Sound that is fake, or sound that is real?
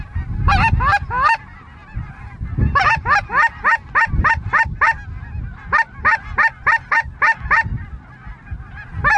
real